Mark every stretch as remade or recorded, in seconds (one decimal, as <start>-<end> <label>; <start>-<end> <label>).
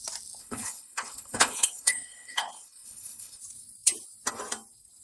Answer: 0.0-0.4 recorded; 0.4-3.4 remade; 3.4-5.0 recorded